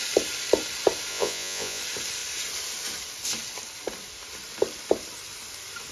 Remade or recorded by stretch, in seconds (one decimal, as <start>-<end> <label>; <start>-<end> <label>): 0.0-1.1 recorded; 1.1-1.8 remade; 1.8-5.9 recorded